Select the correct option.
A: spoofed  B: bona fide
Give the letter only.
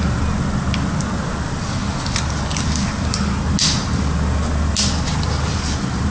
B